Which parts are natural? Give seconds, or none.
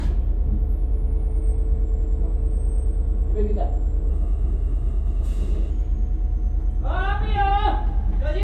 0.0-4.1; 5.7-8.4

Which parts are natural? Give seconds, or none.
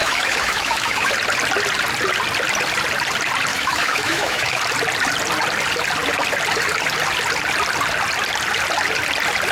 1.1-3.5; 4.6-9.5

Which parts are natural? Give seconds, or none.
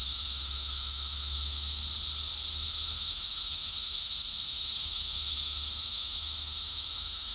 1.8-2.5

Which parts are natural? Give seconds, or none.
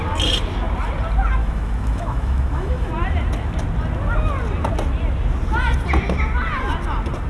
0.0-1.4; 2.9-7.3